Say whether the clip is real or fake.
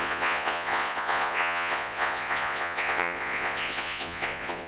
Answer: fake